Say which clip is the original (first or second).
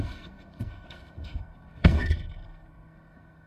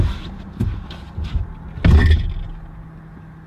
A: second